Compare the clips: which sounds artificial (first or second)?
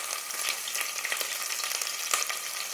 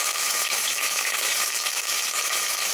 second